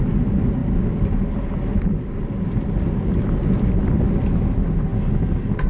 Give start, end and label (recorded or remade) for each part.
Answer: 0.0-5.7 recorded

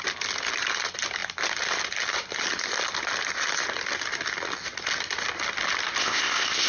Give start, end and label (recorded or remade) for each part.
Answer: 0.0-6.0 recorded; 6.0-6.7 remade